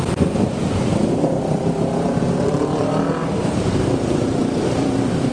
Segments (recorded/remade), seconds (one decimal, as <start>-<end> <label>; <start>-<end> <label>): 0.0-3.2 remade; 3.2-3.8 recorded; 3.8-5.3 remade

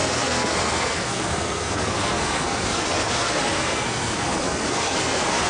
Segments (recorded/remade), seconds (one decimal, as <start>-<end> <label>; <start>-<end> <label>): 0.0-5.5 remade

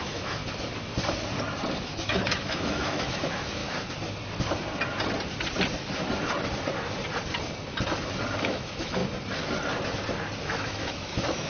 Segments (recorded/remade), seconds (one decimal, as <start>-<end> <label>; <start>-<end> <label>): 0.0-0.4 remade; 0.4-1.8 recorded; 1.8-3.6 remade; 3.6-8.4 recorded; 8.4-9.0 remade; 9.0-10.4 recorded; 10.4-11.5 remade

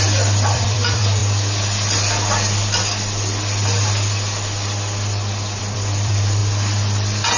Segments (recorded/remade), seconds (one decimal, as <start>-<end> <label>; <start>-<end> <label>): 0.0-1.2 remade; 1.2-5.6 recorded; 5.6-6.4 remade; 6.4-7.4 recorded

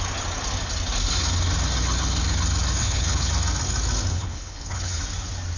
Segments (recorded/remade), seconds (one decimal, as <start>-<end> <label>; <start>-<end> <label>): 0.0-2.8 recorded; 2.8-3.3 remade; 3.3-4.1 recorded; 4.1-5.0 remade; 5.0-5.6 recorded

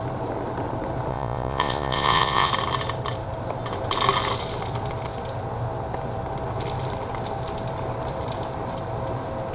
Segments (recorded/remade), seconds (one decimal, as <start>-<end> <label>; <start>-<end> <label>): 0.0-1.1 recorded; 1.1-2.5 remade; 2.5-9.5 recorded

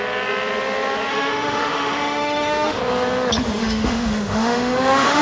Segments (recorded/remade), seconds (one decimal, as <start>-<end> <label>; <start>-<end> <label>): 0.0-1.1 recorded; 1.1-2.8 remade; 2.8-3.6 recorded; 3.6-5.2 remade